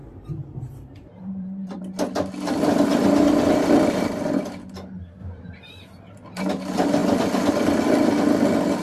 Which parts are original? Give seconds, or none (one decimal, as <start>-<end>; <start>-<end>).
1.8-8.8